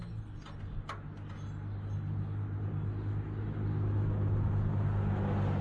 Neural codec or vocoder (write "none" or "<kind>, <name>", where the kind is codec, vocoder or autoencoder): none